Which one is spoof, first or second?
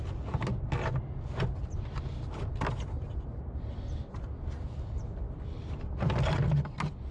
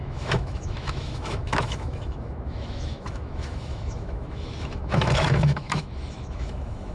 second